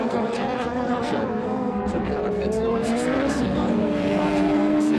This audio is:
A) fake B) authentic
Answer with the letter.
A